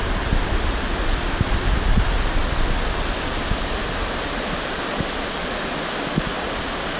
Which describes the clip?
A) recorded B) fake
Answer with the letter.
A